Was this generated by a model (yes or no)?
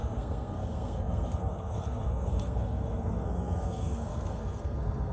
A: yes